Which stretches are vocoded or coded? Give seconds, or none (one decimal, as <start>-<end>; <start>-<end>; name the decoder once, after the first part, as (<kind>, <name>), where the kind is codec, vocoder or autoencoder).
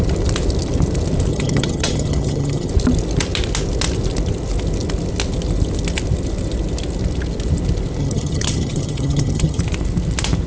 1.3-2.7 (vocoder, HiFi-GAN); 8.0-9.6